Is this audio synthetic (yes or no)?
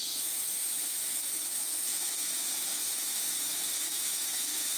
yes